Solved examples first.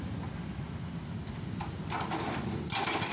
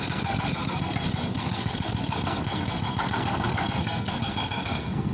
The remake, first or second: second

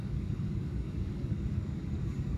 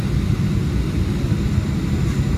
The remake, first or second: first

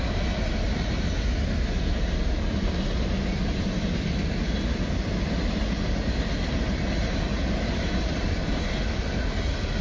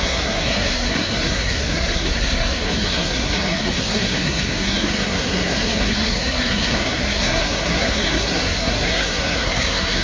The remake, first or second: second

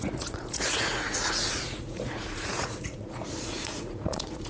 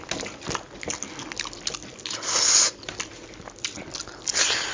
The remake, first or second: first